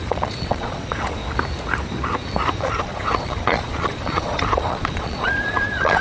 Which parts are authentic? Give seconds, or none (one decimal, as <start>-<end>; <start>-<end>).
1.2-2.6